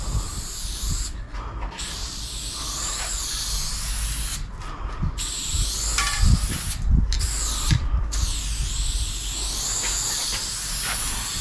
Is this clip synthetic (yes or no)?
no